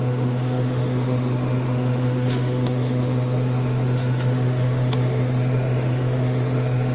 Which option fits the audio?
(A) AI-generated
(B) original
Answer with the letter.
A